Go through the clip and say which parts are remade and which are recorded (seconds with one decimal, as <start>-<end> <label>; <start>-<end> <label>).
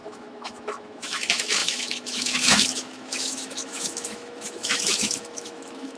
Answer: 0.0-6.0 remade